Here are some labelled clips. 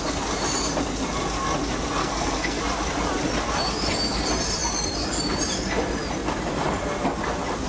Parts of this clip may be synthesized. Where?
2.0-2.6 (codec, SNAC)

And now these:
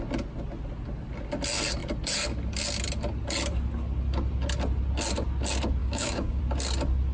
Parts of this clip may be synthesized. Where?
5.8-6.4 (codec, DAC)

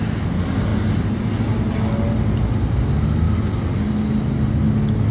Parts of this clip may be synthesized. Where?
none

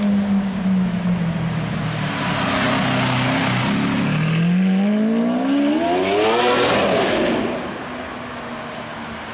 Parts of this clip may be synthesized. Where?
none

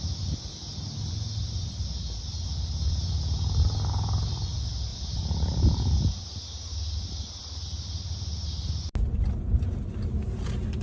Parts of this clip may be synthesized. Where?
none